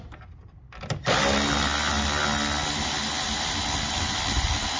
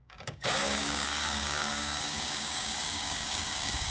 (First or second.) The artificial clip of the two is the second